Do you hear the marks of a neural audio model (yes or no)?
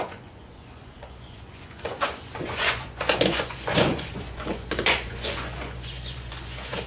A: yes